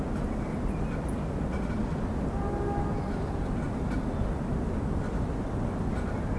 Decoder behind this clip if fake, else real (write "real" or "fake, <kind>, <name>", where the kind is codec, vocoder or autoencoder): real